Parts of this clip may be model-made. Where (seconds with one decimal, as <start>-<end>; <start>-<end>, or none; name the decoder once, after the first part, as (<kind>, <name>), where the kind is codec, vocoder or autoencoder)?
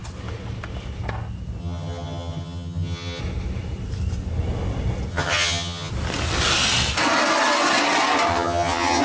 1.6-3.2 (vocoder, HiFi-GAN); 5.1-5.9; 8.3-9.0